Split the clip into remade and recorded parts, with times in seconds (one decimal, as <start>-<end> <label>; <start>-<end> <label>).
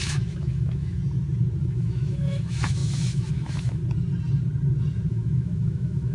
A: 0.0-1.0 remade; 1.0-1.6 recorded; 1.6-3.8 remade; 3.8-5.1 recorded; 5.1-6.1 remade